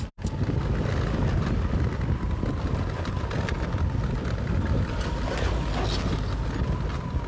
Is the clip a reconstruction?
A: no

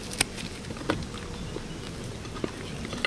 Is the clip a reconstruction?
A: no